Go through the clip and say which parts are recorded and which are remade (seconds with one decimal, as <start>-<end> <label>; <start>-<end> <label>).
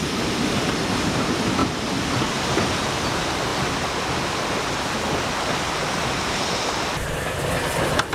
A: 0.0-3.5 remade; 3.5-8.1 recorded